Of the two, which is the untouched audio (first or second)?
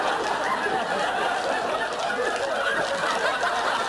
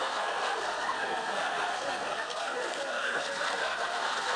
first